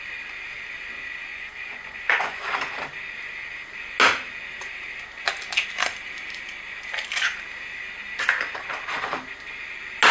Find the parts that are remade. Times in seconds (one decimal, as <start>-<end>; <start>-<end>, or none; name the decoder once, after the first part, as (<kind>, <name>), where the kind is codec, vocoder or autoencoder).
1.3-2.5 (vocoder, Vocos)